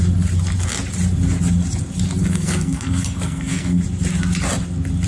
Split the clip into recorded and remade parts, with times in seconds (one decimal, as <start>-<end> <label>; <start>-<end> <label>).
0.0-2.2 recorded; 2.2-3.8 remade; 3.8-5.1 recorded